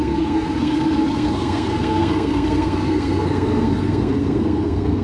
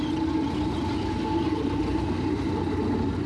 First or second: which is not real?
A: first